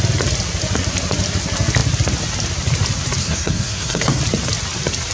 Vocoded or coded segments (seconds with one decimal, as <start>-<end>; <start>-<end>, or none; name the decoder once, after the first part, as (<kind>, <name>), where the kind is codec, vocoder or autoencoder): 3.2-4.2 (codec, SNAC)